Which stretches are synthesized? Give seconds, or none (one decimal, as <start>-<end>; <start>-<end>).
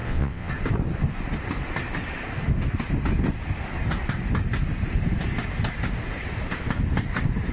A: 0.0-0.5